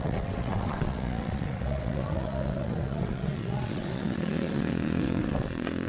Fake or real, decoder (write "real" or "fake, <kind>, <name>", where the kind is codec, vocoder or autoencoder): fake, vocoder, WaveNeXt